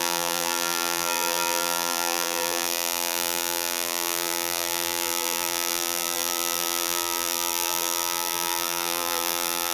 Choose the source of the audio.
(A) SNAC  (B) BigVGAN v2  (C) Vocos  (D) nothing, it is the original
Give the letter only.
B